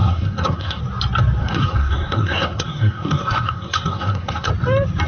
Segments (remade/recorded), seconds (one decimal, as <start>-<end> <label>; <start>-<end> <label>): 0.0-0.8 remade; 0.8-1.4 recorded; 1.4-4.5 remade; 4.5-5.1 recorded

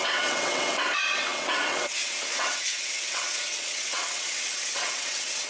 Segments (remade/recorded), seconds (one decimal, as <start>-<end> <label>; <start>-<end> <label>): 0.0-5.5 remade

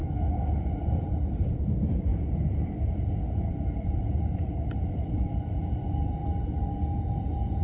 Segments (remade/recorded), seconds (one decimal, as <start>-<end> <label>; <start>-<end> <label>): 0.0-0.8 recorded; 0.8-6.2 remade; 6.2-7.6 recorded

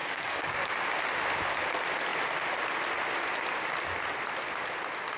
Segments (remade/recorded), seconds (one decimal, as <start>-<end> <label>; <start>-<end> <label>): 0.0-0.7 remade; 0.7-5.2 recorded

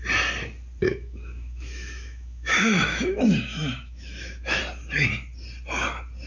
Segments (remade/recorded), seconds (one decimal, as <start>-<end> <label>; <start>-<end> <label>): 0.0-0.8 recorded; 0.8-4.6 remade; 4.6-6.3 recorded

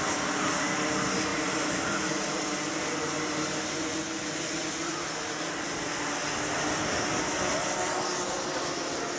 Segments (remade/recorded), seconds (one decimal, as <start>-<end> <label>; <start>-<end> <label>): 0.0-1.3 recorded; 1.3-2.2 remade; 2.2-9.2 recorded

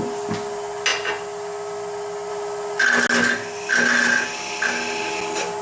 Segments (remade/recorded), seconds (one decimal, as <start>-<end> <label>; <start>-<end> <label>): 0.0-5.6 recorded

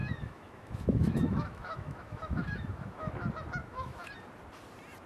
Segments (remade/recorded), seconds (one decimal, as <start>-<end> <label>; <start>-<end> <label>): 0.0-3.1 remade; 3.1-3.6 recorded; 3.6-4.1 remade; 4.1-5.1 recorded